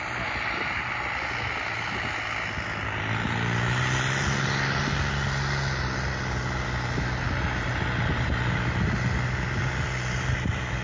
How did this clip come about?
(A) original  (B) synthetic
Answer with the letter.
A